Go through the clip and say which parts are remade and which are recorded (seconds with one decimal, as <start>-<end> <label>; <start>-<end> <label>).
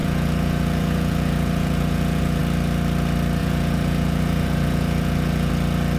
0.0-2.4 remade; 2.4-3.4 recorded; 3.4-5.5 remade; 5.5-6.0 recorded